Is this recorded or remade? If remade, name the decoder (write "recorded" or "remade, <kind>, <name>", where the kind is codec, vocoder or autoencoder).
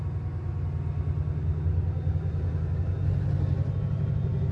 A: recorded